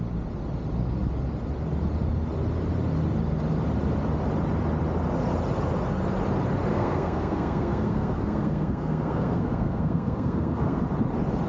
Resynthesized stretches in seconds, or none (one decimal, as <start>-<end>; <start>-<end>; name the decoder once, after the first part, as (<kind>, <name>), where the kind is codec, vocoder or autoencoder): 6.7-10.8 (codec, SNAC)